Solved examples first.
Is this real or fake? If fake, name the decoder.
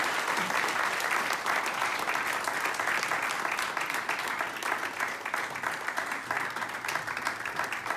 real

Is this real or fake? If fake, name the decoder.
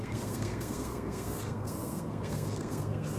fake, codec, SNAC